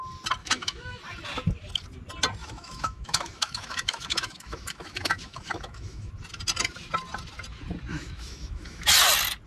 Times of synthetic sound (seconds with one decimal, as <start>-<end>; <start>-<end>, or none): 0.4-1.0; 2.4-6.1; 7.9-8.9